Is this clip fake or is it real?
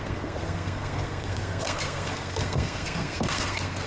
fake